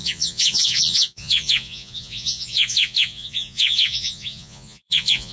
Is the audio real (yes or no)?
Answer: no